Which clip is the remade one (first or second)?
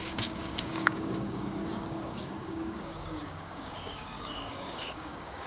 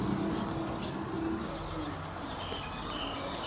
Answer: first